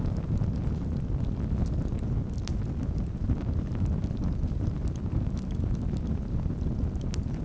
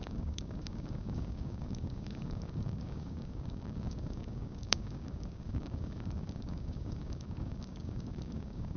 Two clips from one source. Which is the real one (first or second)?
first